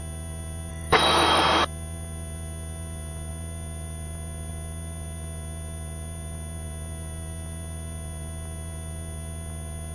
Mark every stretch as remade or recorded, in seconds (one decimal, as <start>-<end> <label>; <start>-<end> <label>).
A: 0.0-0.7 recorded; 0.7-1.4 remade; 1.4-9.9 recorded